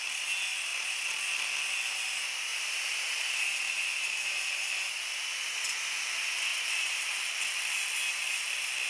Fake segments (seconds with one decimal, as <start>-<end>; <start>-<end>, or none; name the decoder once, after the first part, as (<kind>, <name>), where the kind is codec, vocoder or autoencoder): 2.5-4.7 (vocoder, BigVGAN v2); 6.5-7.2